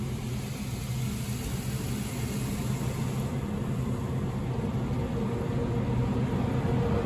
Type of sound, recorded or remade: recorded